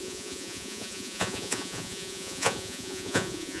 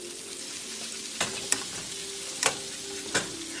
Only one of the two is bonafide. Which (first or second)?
second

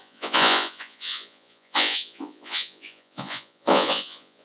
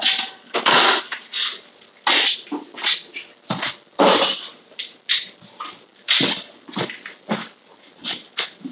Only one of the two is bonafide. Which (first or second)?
second